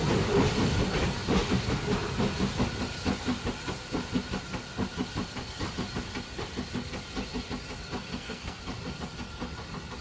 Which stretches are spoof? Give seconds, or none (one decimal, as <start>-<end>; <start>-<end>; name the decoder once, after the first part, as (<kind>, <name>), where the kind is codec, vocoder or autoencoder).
8.1-8.6 (codec, SNAC)